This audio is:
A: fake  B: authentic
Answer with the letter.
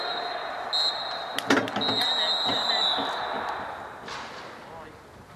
B